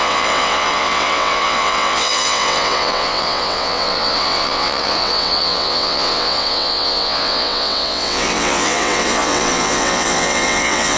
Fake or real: fake